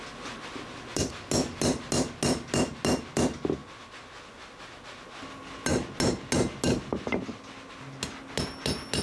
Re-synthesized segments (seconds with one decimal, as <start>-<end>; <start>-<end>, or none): none